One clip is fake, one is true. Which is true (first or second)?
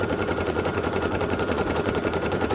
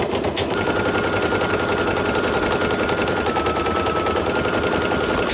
second